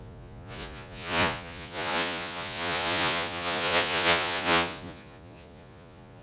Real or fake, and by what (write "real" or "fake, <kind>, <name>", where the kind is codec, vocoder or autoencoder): fake, vocoder, Vocos